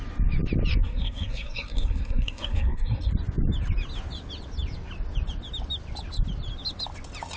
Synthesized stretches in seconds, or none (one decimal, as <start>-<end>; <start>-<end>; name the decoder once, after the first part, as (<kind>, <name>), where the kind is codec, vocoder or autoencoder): 0.7-3.1 (codec, SNAC)